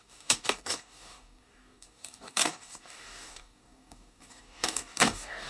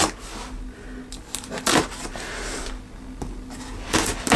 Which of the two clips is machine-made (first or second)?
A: first